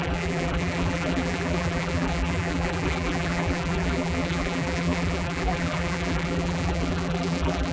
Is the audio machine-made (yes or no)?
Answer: yes